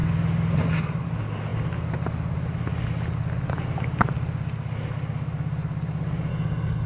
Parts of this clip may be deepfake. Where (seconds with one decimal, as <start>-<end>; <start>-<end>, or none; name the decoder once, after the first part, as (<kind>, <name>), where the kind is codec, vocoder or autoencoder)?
6.3-6.9 (codec, DAC)